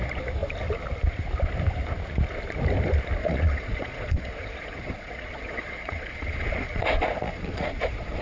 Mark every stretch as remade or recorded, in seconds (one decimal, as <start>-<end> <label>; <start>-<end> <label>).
0.0-3.2 recorded; 3.2-8.2 remade